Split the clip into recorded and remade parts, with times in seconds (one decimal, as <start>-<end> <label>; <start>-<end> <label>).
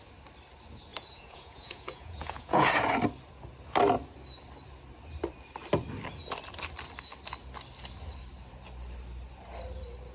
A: 0.0-0.9 recorded; 0.9-2.8 remade; 2.8-10.1 recorded